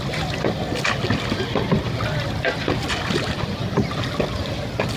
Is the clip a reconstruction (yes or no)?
no